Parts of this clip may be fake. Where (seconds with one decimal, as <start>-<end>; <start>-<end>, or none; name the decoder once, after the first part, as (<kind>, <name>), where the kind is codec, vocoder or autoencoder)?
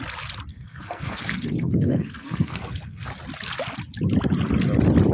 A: 0.5-3.1 (codec, SNAC)